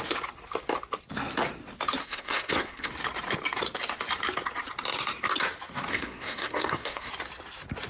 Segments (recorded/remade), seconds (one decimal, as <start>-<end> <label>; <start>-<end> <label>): 0.0-2.0 recorded; 2.0-2.9 remade; 2.9-5.9 recorded; 5.9-7.1 remade; 7.1-7.9 recorded